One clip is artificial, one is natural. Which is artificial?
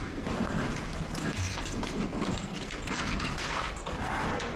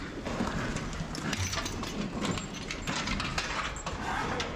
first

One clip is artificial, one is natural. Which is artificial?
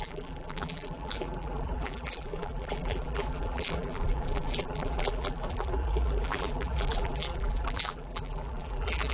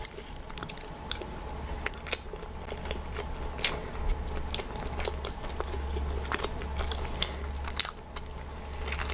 first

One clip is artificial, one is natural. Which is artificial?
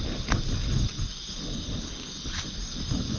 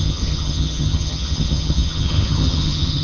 second